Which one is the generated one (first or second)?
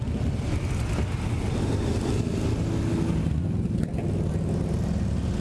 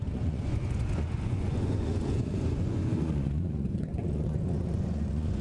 second